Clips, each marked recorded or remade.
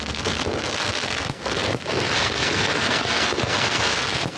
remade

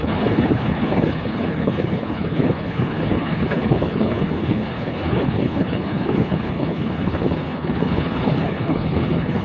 remade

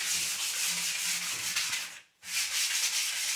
recorded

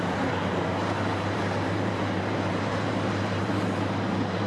remade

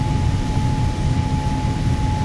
recorded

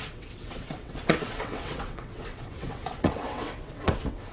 remade